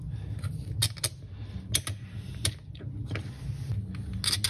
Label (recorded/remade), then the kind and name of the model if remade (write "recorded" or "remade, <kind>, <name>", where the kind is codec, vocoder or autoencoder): recorded